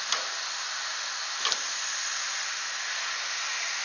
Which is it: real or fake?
real